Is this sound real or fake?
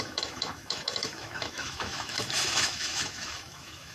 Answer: fake